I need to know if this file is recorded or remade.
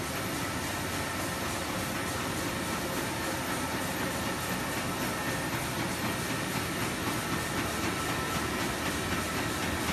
recorded